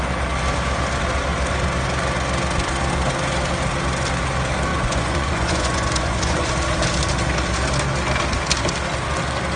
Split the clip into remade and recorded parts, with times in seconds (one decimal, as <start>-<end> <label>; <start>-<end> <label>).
0.0-4.7 recorded; 4.7-6.5 remade; 6.5-9.6 recorded